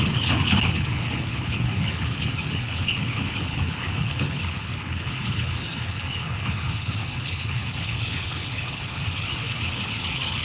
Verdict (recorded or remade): remade